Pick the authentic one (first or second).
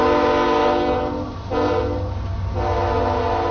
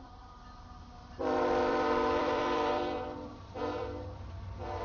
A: first